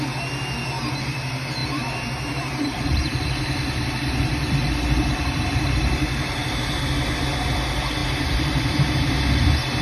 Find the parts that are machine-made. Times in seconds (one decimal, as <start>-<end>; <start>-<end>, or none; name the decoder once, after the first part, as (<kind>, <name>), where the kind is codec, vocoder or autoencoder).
1.6-6.7 (vocoder, BigVGAN v2); 8.0-9.1